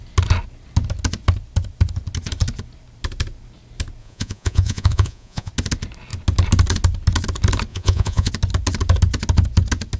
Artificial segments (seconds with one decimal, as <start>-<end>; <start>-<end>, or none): 4.0-5.5; 7.7-8.3